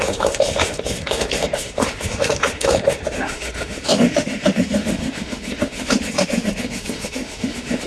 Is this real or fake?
fake